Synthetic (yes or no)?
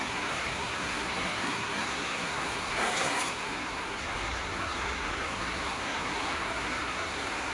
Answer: yes